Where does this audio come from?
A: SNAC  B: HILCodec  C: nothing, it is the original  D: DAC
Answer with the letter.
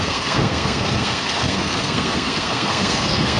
A